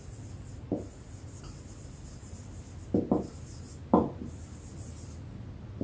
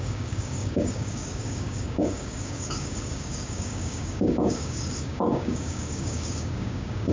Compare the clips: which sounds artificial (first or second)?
second